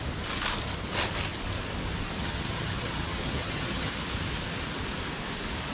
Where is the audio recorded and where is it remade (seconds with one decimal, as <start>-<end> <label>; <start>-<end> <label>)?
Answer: 0.0-2.2 recorded; 2.2-3.9 remade; 3.9-5.7 recorded